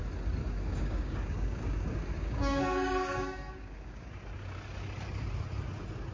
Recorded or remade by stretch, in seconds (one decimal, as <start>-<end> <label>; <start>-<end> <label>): 0.0-0.4 recorded; 0.4-4.1 remade; 4.1-6.1 recorded